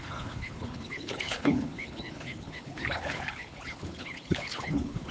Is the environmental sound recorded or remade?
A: remade